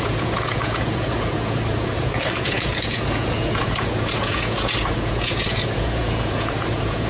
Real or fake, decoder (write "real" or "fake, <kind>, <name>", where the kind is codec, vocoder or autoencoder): fake, vocoder, Vocos